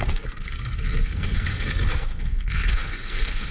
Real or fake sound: fake